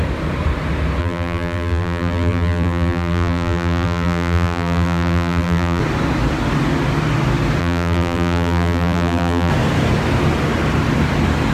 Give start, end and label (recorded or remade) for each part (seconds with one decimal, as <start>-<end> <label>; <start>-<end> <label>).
0.0-1.0 recorded; 1.0-5.8 remade; 5.8-7.6 recorded; 7.6-9.5 remade; 9.5-11.5 recorded